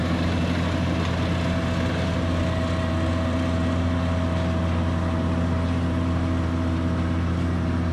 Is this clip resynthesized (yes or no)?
no